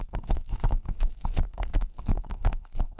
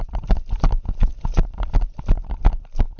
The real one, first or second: second